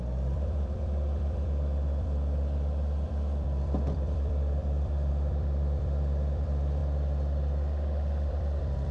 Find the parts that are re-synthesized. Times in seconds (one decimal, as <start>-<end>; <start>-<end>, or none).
0.0-6.8; 8.3-8.9